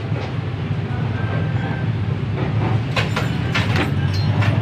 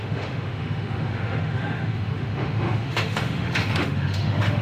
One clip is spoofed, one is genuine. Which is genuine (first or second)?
first